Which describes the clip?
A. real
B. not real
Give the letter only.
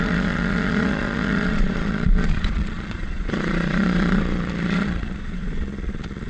B